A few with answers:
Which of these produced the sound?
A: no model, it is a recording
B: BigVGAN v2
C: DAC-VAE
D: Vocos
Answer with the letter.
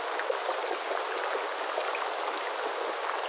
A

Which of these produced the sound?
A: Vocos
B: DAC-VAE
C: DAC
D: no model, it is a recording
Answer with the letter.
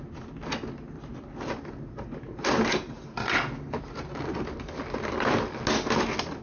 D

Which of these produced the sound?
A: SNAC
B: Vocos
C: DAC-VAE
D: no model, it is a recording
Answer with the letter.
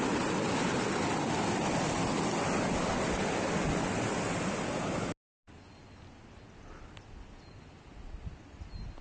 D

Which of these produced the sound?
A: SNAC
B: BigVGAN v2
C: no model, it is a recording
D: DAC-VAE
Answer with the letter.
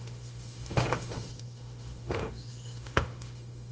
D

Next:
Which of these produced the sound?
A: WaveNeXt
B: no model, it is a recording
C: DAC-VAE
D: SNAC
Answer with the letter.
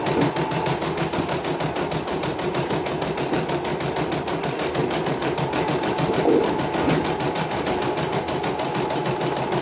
B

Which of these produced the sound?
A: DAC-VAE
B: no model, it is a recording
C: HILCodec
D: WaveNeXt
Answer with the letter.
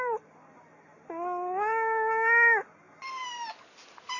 B